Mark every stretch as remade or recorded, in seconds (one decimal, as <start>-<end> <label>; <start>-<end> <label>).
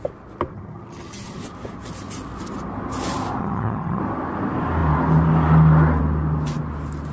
0.0-0.5 recorded; 0.5-1.4 remade; 1.4-3.4 recorded; 3.4-4.0 remade; 4.0-7.1 recorded